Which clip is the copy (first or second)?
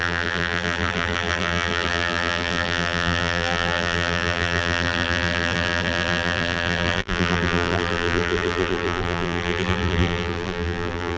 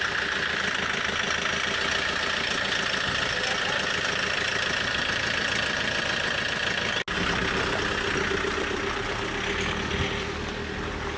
first